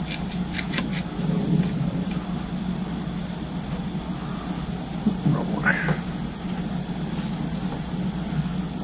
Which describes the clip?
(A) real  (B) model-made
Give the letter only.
A